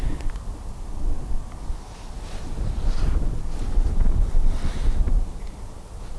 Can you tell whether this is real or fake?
real